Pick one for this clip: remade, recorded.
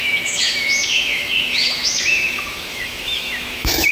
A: remade